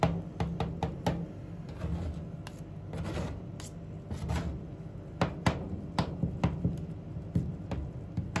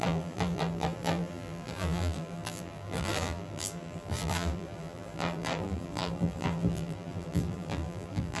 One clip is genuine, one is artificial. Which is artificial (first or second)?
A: second